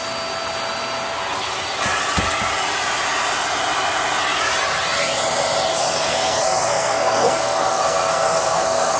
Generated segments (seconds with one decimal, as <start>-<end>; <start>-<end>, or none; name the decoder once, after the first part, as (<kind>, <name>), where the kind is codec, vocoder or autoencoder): 5.7-9.0 (codec, SNAC)